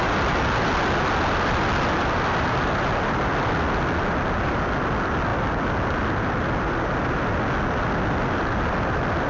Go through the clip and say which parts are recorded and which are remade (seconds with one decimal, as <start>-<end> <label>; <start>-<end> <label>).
0.0-9.3 recorded